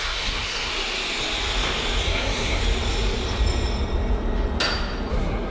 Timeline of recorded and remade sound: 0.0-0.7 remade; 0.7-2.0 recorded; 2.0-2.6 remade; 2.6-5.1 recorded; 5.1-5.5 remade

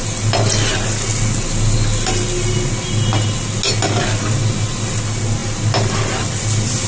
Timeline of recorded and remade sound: 0.0-6.9 recorded